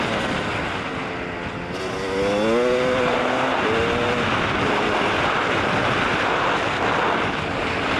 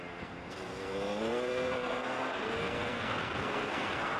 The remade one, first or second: second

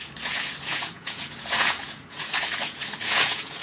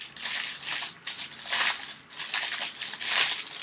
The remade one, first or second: first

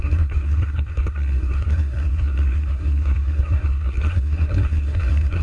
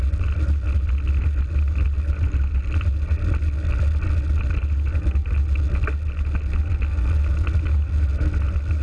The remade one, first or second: first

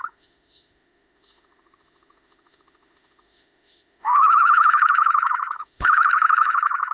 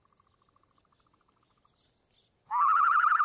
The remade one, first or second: first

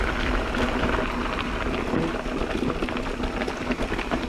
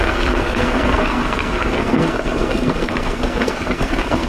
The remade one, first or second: second